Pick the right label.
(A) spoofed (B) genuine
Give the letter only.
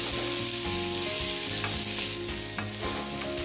B